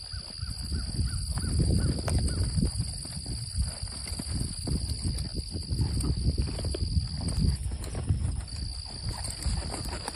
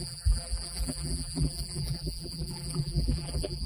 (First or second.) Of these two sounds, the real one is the first